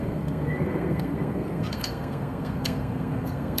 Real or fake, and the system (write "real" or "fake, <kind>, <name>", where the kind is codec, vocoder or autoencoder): fake, codec, SNAC